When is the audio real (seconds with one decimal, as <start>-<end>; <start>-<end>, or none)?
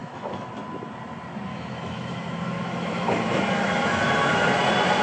0.5-1.5; 4.5-5.0